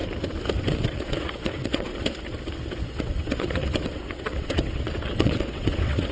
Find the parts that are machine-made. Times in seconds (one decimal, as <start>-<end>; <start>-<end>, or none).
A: 0.7-1.9; 2.9-6.1